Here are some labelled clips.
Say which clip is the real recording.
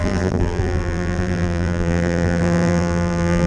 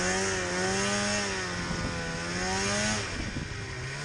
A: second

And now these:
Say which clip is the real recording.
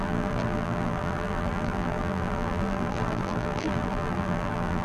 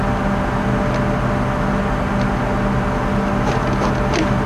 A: second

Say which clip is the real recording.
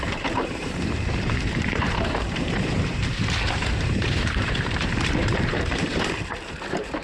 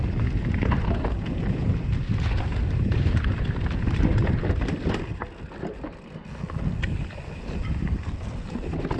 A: second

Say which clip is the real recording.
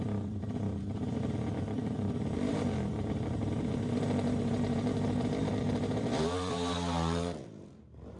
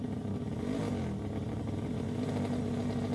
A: second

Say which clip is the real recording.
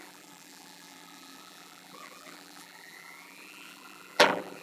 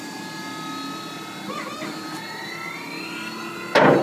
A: second